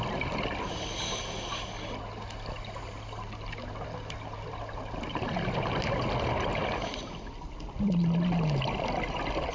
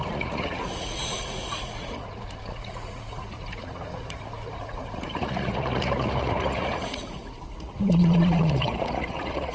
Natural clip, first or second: first